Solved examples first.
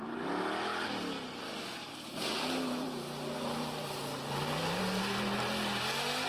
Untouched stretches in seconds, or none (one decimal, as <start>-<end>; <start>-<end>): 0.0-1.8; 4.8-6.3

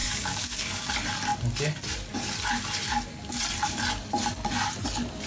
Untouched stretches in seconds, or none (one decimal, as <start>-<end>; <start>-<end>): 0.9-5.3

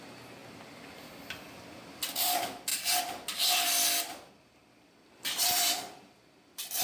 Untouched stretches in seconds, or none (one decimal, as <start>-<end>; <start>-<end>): 0.0-6.8